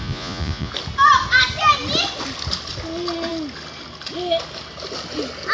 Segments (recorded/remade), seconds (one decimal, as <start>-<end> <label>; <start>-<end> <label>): 0.0-0.7 remade; 0.7-5.5 recorded